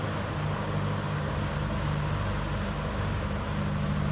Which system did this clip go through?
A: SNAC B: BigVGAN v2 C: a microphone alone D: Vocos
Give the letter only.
C